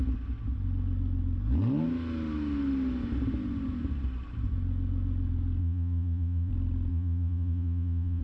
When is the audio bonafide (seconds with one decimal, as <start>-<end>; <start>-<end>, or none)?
0.0-5.6; 6.5-6.9